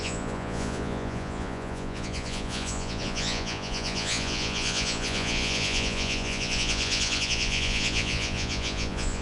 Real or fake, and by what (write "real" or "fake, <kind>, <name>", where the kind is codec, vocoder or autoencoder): fake, vocoder, Vocos